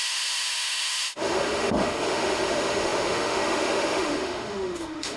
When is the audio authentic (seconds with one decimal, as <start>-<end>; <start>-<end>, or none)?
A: none